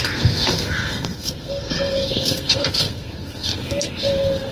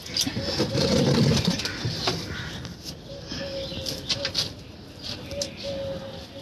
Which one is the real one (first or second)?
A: second